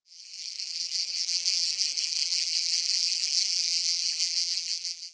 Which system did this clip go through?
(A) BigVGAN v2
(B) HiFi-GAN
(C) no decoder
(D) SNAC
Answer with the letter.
A